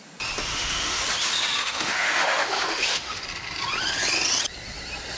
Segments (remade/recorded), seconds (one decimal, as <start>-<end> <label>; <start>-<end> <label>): 0.0-0.5 recorded; 0.5-1.0 remade; 1.0-1.6 recorded; 1.6-3.2 remade; 3.2-5.2 recorded